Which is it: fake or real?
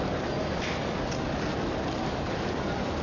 real